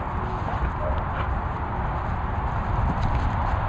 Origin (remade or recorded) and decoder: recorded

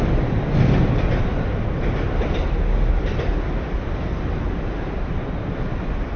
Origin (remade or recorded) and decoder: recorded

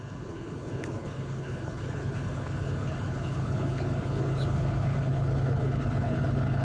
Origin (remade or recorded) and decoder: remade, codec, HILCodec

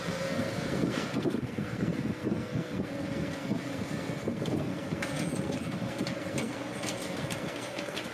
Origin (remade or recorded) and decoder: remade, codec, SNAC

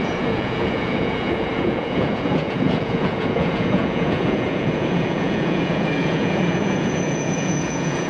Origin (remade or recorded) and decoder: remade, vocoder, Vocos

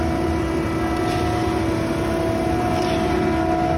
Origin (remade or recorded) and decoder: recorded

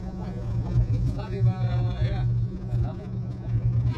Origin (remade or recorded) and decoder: remade, vocoder, Vocos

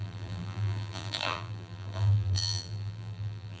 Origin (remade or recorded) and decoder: remade, vocoder, BigVGAN v2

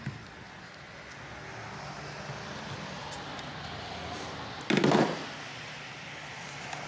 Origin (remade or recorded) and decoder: recorded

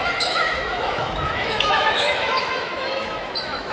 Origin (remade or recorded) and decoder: remade, autoencoder, DAC-VAE